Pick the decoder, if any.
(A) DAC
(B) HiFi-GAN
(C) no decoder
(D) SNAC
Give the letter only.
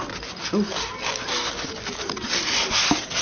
C